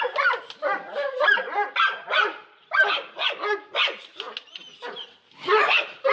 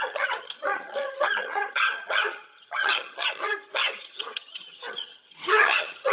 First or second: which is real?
first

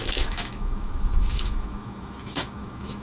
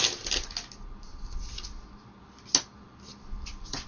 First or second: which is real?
second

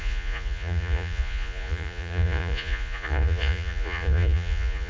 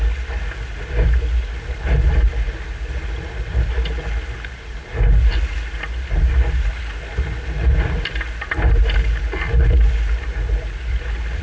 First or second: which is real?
second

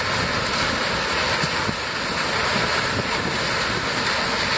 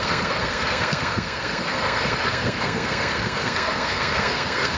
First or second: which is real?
first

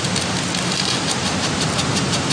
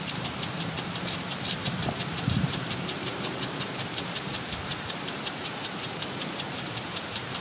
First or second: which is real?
first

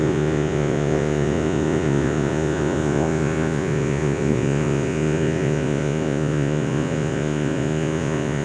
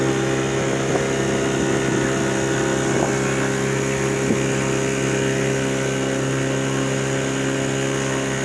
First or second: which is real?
second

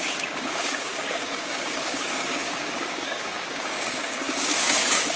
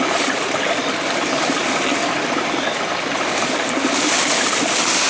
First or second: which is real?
second